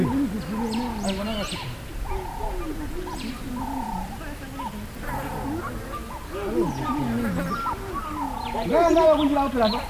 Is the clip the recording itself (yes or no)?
yes